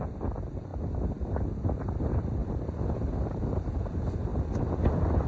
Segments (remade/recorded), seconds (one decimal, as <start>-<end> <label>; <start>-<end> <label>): 0.0-2.4 recorded; 2.4-3.4 remade; 3.4-5.3 recorded